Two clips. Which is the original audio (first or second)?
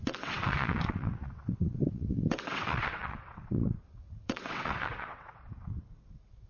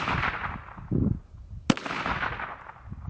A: second